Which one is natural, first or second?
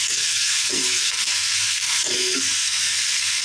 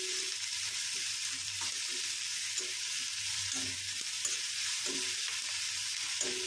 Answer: second